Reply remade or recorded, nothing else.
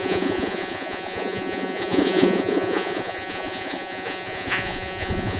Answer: remade